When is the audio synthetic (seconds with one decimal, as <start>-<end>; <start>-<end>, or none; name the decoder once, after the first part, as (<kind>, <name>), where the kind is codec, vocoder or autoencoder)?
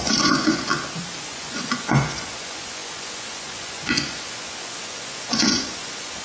0.0-0.7 (vocoder, Vocos); 1.2-6.2